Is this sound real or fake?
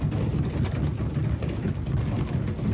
real